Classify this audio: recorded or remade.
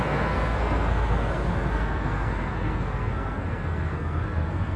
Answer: remade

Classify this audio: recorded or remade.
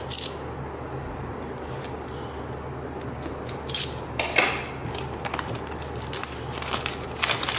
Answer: recorded